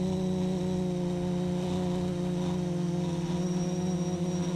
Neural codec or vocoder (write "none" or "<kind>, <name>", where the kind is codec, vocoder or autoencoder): none